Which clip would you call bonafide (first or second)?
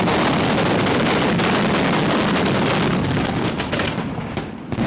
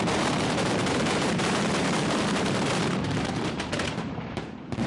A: first